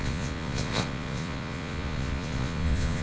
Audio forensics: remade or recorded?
remade